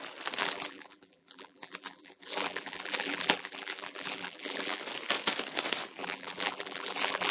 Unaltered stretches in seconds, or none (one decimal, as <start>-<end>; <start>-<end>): 0.0-0.4; 4.8-6.0